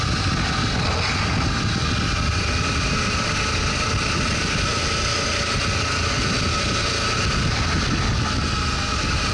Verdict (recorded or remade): recorded